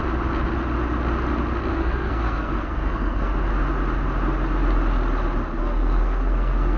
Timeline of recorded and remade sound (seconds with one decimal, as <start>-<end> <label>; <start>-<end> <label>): 0.0-1.7 recorded; 1.7-3.3 remade; 3.3-5.6 recorded; 5.6-6.8 remade